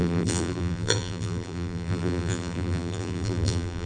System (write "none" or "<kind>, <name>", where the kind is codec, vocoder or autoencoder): vocoder, BigVGAN v2